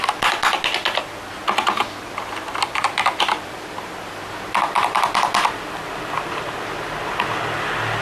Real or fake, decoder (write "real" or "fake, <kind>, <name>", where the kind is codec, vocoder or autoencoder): real